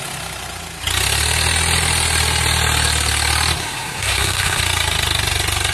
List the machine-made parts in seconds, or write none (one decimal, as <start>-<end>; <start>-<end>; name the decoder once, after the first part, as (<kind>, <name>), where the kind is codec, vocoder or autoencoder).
3.6-4.6 (codec, SNAC)